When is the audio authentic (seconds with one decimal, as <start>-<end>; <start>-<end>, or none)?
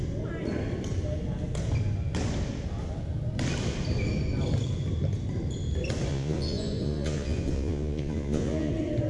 0.0-6.1; 8.7-9.1